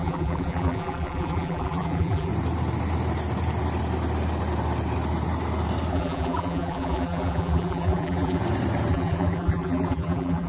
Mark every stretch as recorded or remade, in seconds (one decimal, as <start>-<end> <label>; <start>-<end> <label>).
0.0-2.3 remade; 2.3-5.9 recorded; 5.9-8.4 remade; 8.4-8.9 recorded; 8.9-10.5 remade